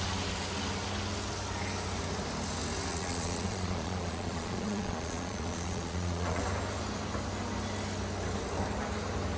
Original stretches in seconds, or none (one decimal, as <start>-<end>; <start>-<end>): 0.0-2.9; 6.4-9.4